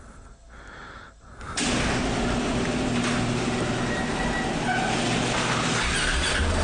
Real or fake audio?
real